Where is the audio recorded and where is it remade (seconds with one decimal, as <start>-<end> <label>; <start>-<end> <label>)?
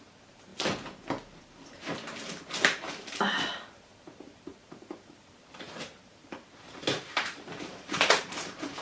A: 0.0-0.5 remade; 0.5-1.4 recorded; 1.4-8.8 remade